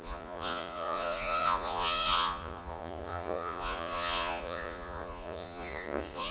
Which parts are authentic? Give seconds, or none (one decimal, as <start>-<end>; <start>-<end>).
none